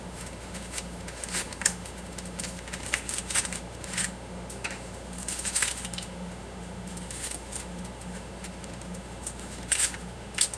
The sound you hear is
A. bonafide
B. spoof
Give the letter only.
B